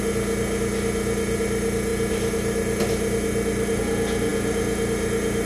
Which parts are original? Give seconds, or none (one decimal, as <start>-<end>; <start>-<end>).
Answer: 0.0-5.5